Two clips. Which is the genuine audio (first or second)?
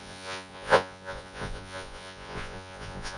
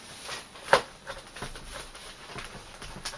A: second